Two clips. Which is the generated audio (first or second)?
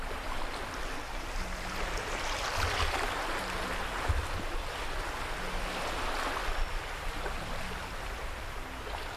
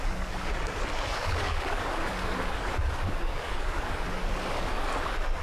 second